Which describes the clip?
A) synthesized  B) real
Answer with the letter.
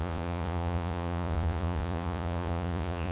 A